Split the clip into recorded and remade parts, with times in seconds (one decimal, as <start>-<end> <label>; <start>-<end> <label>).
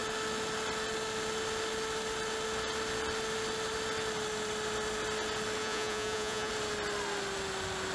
0.0-5.6 recorded; 5.6-6.5 remade; 6.5-7.9 recorded